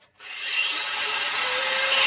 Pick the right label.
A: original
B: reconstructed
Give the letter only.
B